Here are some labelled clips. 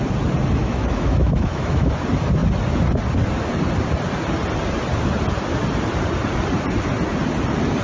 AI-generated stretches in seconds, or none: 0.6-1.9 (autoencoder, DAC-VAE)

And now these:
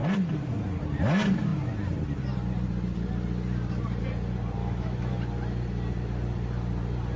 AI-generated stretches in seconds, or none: 4.6-5.2 (autoencoder, DAC-VAE)

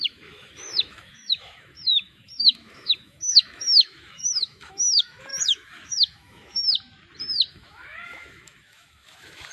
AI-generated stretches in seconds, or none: 0.0-6.6 (autoencoder, DAC-VAE); 7.5-9.5